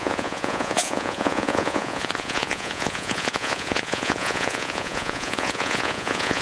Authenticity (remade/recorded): remade